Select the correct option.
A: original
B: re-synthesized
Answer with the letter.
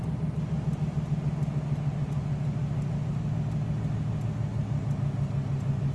A